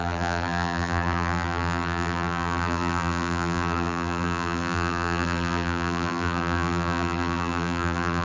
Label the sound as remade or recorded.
remade